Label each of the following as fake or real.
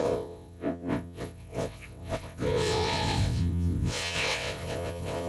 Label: fake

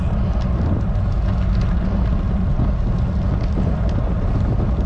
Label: real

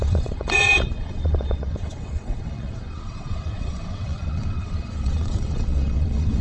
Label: fake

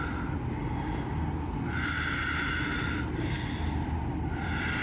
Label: real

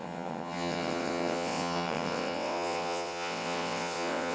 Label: fake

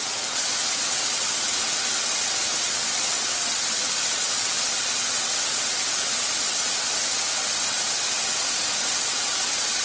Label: fake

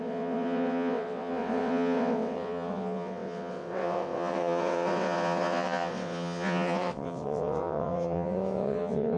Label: fake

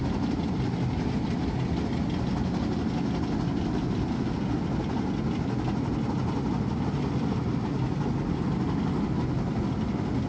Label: real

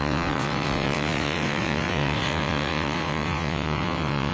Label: fake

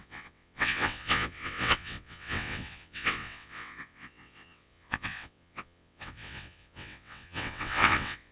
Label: fake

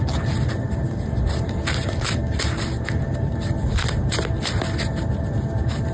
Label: real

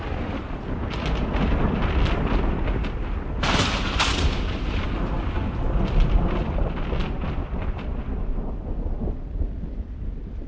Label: real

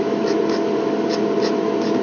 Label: real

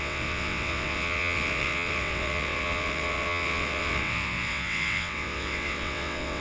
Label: fake